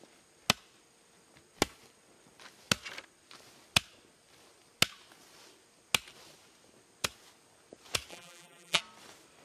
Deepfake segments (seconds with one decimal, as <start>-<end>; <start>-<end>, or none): 8.1-8.8